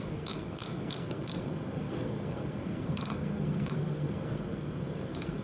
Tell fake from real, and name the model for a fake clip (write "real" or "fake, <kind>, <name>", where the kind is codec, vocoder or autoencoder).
fake, codec, SNAC